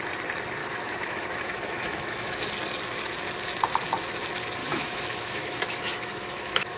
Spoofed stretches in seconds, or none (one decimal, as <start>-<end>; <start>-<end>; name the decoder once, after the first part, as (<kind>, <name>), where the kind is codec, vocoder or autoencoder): 0.6-2.4 (autoencoder, DAC-VAE); 4.6-6.8